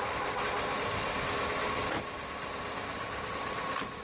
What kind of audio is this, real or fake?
real